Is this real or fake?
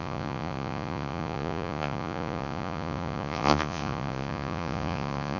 fake